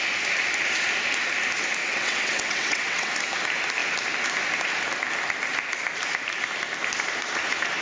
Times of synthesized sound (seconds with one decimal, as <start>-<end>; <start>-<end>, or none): 1.8-3.1